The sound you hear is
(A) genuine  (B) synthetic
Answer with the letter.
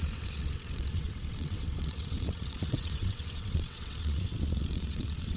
B